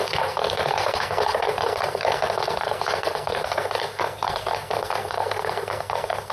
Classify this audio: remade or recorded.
remade